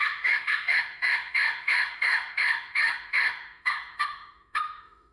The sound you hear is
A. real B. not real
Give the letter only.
B